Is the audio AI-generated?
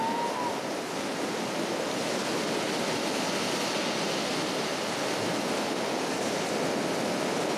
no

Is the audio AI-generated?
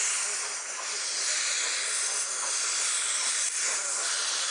no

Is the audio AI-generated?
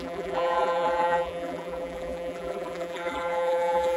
yes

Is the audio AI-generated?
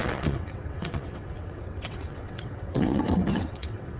yes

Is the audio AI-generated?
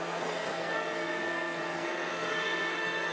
yes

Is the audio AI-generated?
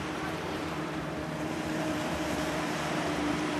yes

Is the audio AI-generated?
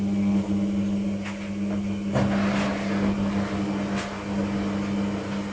no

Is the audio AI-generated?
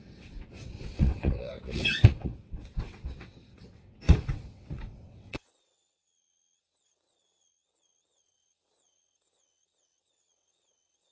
yes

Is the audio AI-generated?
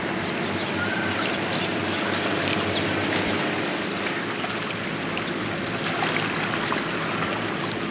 no